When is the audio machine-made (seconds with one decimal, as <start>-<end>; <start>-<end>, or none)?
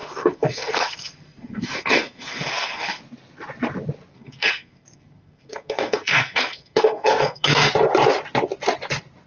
0.0-3.0; 4.1-7.7